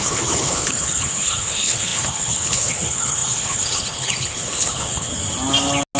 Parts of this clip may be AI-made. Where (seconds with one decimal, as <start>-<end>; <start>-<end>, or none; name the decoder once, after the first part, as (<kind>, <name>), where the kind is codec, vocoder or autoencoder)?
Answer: 0.0-5.1 (codec, HILCodec)